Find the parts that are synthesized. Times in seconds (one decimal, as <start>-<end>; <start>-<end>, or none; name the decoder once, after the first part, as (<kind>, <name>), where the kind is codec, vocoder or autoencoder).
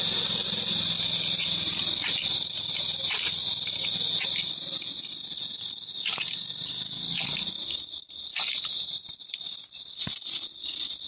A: none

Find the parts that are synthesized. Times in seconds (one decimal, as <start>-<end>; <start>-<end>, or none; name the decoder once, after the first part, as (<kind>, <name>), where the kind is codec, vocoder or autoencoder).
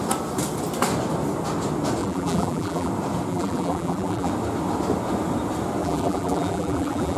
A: 2.0-2.9 (vocoder, BigVGAN v2); 3.3-4.3; 5.8-7.2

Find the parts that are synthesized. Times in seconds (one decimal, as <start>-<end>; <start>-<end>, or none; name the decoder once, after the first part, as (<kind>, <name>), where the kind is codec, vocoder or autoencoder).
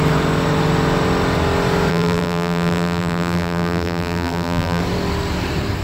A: 1.9-4.8 (vocoder, BigVGAN v2)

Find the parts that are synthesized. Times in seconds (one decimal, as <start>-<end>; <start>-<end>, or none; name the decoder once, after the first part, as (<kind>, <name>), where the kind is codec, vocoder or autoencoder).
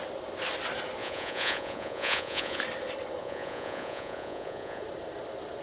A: 1.0-2.6 (vocoder, Vocos); 3.2-4.8